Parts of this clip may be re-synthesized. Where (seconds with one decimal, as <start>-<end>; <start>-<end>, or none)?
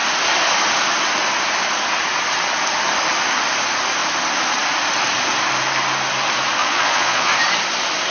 6.6-7.3